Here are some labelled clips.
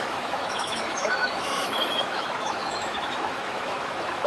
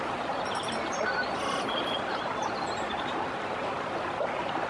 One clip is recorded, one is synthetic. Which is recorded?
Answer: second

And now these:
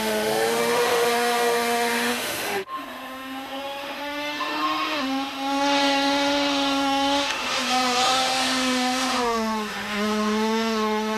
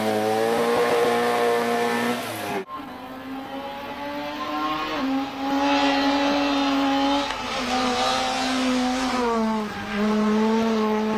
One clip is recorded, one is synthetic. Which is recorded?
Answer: second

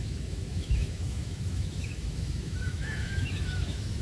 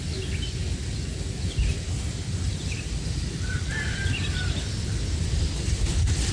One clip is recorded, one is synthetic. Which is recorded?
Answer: second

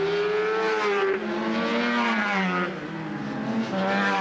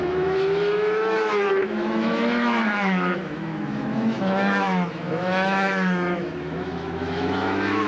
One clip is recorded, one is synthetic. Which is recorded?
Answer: first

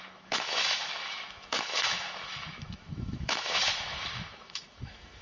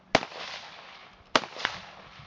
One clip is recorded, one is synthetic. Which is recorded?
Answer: second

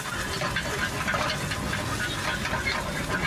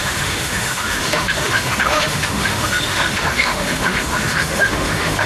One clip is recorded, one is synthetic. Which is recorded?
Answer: first